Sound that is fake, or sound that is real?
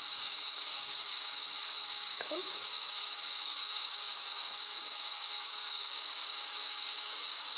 fake